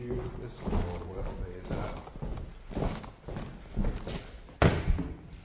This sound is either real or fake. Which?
real